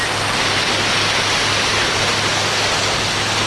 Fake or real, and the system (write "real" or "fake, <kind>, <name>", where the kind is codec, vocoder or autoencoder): real